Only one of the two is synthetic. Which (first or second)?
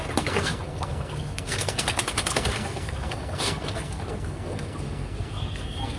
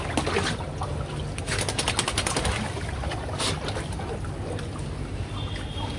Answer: first